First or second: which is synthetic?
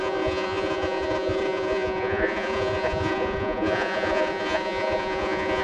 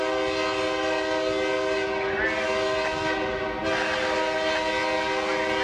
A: first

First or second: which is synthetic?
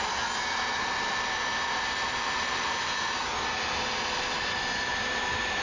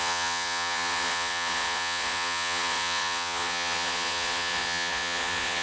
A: second